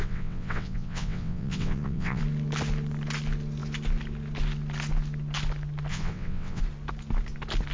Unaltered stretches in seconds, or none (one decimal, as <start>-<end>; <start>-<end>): 2.2-5.9; 6.6-7.7